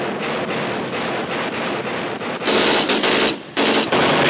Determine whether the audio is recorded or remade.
recorded